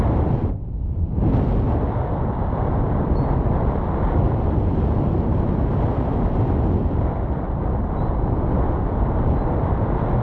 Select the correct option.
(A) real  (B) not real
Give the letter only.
A